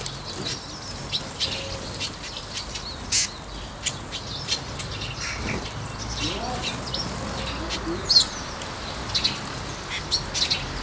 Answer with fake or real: real